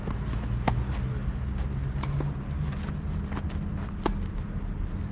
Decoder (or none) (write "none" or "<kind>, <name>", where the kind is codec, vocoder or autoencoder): none